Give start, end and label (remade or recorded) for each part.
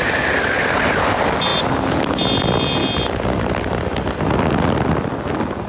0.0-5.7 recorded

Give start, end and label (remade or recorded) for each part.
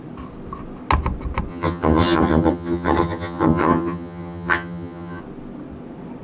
0.0-1.5 recorded; 1.5-5.2 remade; 5.2-6.2 recorded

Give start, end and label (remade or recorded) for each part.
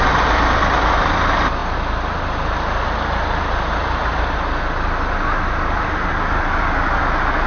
0.0-7.5 recorded